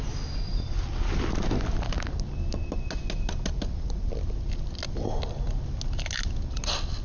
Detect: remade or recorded recorded